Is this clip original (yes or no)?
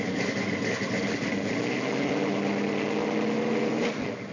yes